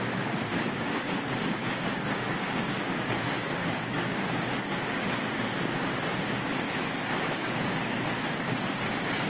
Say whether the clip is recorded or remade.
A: remade